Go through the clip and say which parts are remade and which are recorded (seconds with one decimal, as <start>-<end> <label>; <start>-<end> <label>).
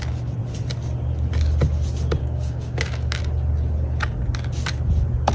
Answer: 0.0-2.2 recorded; 2.2-3.2 remade; 3.2-5.3 recorded